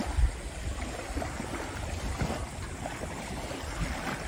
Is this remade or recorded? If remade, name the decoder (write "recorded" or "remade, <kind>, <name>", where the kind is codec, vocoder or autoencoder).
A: recorded